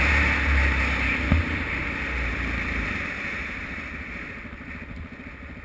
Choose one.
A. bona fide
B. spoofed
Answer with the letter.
A